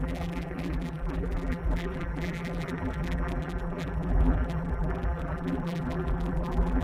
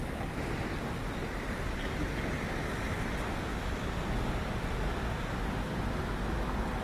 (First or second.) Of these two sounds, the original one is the second